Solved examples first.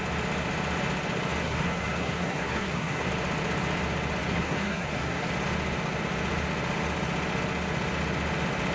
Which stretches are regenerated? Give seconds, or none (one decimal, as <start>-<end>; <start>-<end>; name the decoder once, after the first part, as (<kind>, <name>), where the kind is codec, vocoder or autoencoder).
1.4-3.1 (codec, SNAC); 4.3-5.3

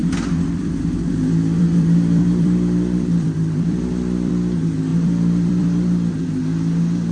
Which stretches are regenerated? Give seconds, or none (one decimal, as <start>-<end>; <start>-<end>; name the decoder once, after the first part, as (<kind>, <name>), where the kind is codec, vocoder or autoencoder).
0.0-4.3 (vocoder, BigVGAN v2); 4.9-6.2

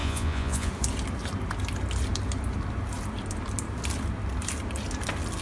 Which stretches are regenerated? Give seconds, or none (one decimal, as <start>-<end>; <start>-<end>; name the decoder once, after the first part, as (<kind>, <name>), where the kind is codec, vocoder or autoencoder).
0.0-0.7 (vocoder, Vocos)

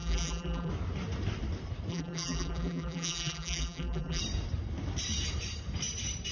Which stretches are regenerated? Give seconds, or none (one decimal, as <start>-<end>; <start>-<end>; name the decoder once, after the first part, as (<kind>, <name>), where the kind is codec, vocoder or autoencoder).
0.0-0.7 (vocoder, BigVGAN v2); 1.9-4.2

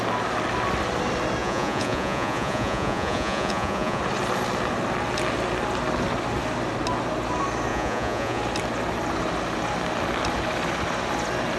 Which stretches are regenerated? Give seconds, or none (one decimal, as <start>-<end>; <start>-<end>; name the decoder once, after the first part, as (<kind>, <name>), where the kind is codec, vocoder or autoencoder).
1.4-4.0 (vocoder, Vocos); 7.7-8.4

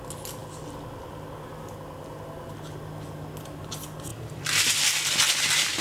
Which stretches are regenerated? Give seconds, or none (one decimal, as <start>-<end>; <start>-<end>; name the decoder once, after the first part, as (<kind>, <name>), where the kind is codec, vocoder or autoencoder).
4.1-4.8 (vocoder, BigVGAN v2)